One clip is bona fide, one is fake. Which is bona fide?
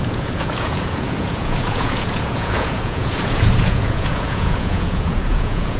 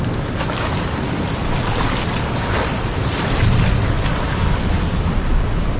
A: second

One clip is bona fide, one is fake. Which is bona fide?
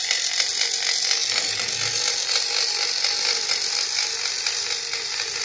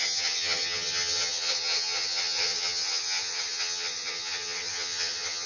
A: first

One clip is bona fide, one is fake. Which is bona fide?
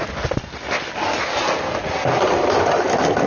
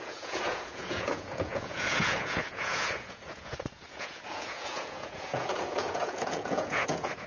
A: first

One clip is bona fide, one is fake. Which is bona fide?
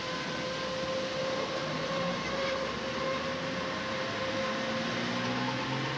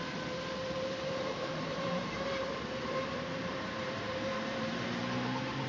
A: first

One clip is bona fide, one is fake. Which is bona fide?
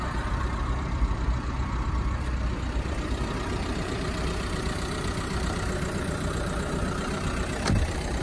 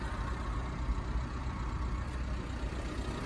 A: second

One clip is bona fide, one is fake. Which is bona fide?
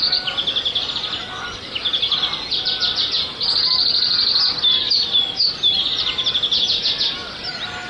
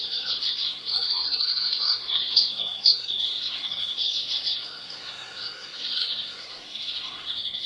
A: first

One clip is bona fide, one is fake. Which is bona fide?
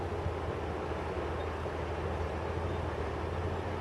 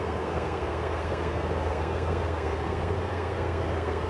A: first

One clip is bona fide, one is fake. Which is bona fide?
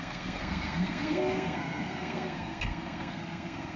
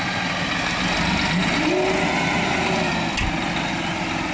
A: second